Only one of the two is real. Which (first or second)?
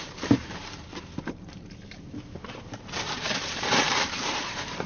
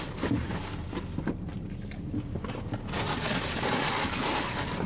second